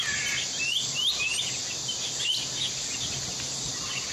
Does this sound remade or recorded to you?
recorded